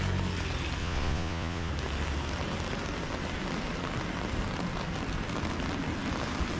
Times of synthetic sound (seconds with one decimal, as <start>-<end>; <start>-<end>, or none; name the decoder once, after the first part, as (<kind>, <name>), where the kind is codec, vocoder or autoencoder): 0.8-1.7 (vocoder, Vocos)